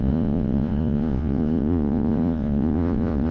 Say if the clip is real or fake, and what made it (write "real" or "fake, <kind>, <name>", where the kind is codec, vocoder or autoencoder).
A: fake, vocoder, Vocos